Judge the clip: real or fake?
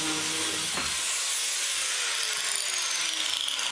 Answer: real